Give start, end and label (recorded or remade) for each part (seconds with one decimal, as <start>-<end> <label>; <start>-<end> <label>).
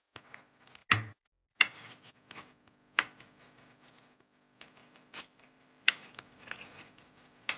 0.0-4.8 recorded; 4.8-5.9 remade; 5.9-7.6 recorded